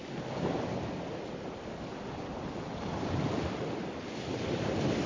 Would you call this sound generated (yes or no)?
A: no